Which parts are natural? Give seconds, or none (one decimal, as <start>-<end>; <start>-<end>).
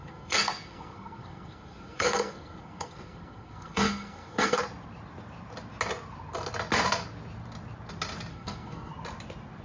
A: 4.6-8.3; 8.9-9.6